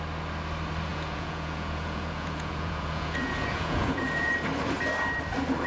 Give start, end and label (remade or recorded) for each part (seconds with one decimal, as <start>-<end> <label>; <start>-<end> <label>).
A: 0.0-0.9 recorded; 0.9-4.3 remade; 4.3-5.7 recorded